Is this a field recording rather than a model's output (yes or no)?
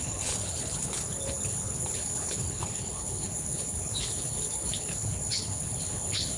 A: no